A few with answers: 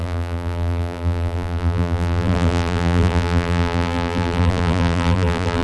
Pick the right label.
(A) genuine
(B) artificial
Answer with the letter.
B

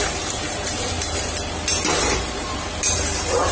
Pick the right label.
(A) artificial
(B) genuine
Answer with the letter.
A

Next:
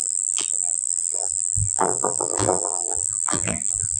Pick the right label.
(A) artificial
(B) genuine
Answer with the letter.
A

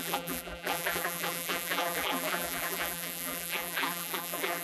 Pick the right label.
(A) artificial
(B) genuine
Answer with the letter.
A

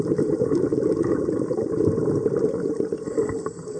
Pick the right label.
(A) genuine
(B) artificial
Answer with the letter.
A